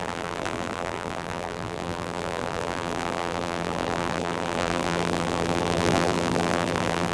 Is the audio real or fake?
fake